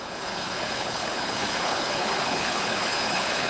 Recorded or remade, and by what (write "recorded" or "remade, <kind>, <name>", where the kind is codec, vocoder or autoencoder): remade, codec, HILCodec